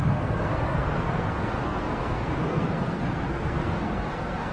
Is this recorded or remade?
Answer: remade